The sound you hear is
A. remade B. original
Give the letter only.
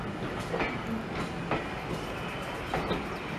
B